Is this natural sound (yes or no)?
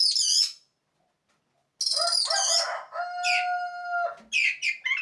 yes